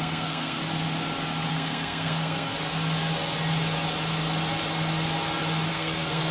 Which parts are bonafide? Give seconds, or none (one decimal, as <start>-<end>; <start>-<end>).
0.6-1.5; 2.5-5.7